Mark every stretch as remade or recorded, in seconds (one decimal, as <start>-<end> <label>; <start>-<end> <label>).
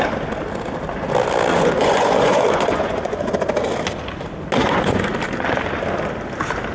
0.0-1.5 recorded; 1.5-3.3 remade; 3.3-4.6 recorded; 4.6-5.1 remade; 5.1-6.7 recorded